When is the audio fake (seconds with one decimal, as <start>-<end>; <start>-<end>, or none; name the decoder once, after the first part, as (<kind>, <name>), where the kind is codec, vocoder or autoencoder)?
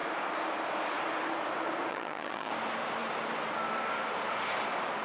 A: 1.9-2.5 (vocoder, HiFi-GAN)